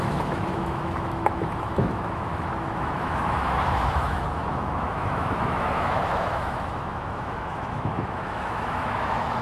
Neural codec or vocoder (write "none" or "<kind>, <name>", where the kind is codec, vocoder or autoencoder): autoencoder, DAC-VAE